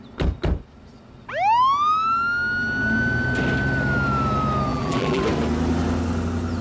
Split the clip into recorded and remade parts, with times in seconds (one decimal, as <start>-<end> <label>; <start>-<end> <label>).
0.0-4.7 recorded; 4.7-5.2 remade; 5.2-6.6 recorded